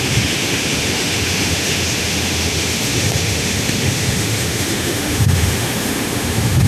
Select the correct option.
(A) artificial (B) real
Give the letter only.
A